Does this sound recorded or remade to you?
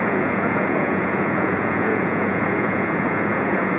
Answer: remade